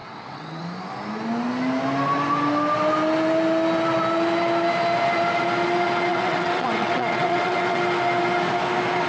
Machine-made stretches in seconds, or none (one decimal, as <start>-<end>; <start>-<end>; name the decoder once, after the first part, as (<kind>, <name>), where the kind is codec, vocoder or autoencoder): 0.0-0.6 (vocoder, WaveNeXt); 6.1-7.8